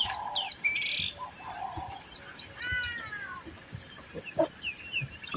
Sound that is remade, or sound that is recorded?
recorded